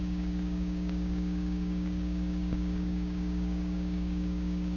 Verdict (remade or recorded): remade